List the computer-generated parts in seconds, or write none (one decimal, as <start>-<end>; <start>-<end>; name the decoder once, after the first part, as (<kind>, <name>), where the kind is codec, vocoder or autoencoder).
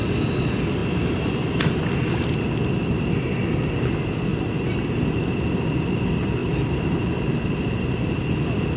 0.8-1.6 (vocoder, BigVGAN v2); 6.4-7.6